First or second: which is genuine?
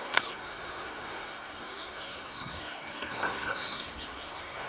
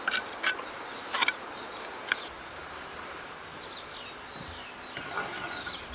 second